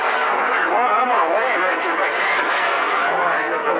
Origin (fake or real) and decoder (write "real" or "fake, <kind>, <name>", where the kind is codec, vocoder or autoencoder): fake, codec, SNAC